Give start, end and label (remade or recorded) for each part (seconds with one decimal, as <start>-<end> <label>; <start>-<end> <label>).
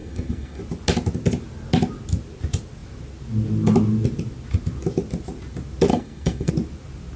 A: 0.0-0.6 remade; 0.6-5.9 recorded; 5.9-6.5 remade; 6.5-7.2 recorded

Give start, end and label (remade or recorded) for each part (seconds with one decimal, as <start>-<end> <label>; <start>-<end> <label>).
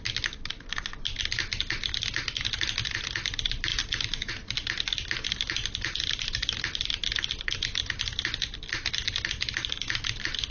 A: 0.0-10.5 recorded